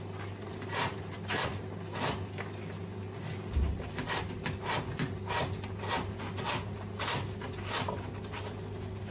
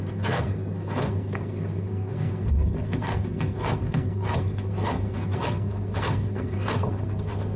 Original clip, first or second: first